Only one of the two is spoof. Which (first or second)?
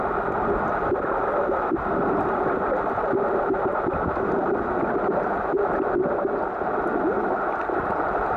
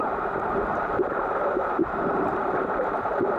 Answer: second